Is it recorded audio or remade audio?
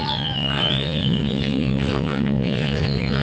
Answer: remade